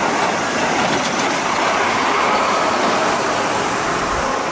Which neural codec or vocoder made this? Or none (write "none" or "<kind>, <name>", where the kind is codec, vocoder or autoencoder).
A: none